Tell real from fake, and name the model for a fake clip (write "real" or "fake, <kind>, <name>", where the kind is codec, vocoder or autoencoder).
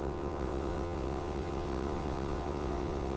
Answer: fake, vocoder, WaveNeXt